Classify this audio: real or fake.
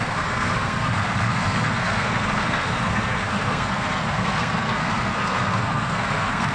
fake